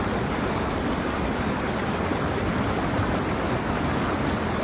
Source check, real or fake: fake